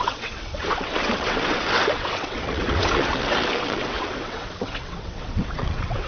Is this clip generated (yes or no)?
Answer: yes